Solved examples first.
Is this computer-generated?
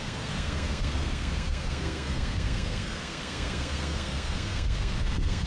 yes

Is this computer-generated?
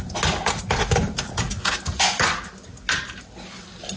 no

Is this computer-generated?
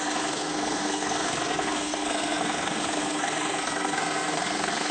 yes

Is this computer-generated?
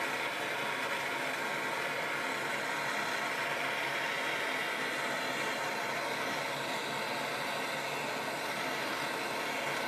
no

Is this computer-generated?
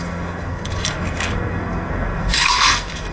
yes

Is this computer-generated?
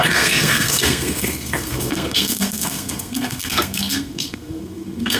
yes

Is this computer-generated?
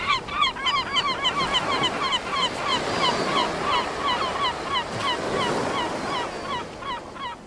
no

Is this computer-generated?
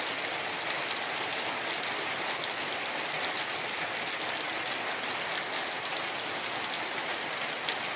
no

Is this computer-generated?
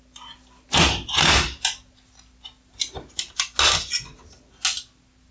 no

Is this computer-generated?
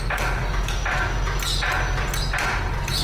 no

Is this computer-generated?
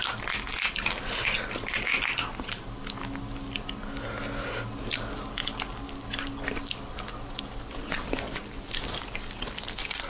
no